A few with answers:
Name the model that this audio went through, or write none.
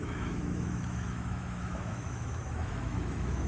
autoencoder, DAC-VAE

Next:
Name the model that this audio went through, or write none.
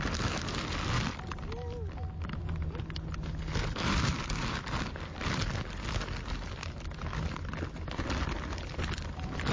none